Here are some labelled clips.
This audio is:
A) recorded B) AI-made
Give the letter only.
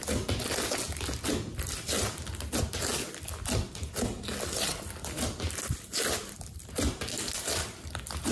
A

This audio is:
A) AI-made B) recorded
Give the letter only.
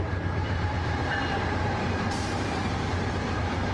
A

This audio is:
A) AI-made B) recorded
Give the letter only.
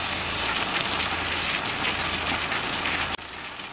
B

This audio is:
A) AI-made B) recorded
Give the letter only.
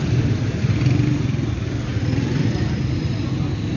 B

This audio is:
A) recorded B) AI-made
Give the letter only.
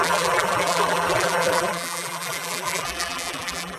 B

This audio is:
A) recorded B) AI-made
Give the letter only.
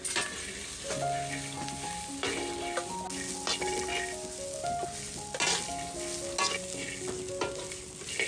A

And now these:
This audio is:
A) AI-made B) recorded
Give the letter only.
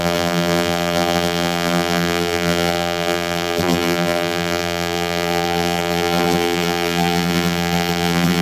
A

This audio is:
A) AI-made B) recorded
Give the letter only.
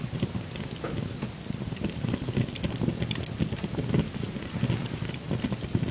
B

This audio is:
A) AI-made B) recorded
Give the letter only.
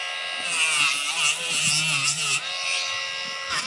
B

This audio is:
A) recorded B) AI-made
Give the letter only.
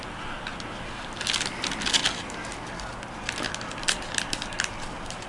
A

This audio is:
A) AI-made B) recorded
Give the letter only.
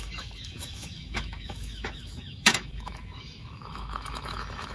A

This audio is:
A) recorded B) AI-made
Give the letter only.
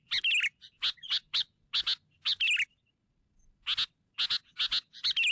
A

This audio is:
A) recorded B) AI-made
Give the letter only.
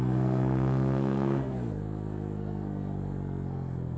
B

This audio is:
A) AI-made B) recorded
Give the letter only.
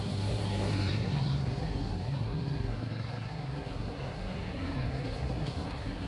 A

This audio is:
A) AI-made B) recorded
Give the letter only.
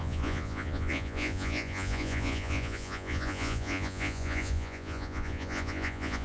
A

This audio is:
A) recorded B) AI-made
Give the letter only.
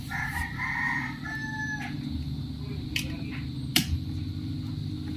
A